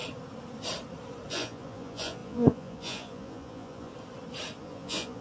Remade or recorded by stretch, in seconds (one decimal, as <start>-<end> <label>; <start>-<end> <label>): 0.0-1.3 recorded; 1.3-3.9 remade; 3.9-4.6 recorded; 4.6-5.2 remade